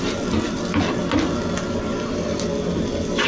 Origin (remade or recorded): recorded